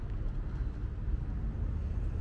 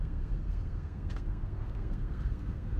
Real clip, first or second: first